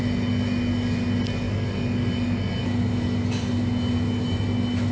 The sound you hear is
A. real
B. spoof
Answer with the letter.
A